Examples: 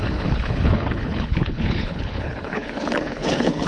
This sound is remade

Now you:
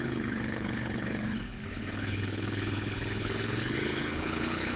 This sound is remade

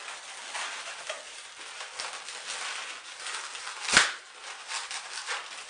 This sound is recorded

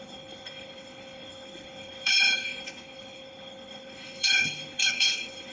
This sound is remade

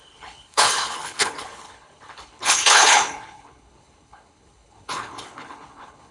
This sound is remade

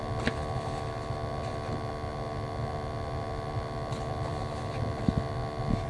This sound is recorded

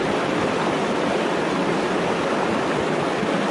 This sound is recorded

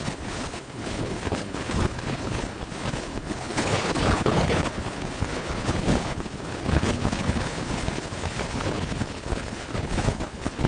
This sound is remade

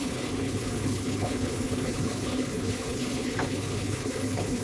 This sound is remade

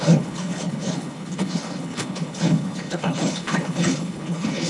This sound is remade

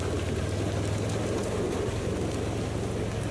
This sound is recorded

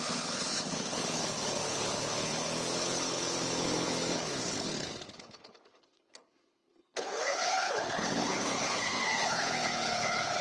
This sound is remade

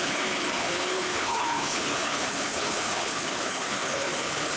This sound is remade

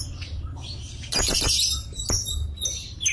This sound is recorded